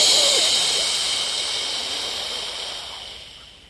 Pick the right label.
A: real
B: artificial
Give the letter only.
A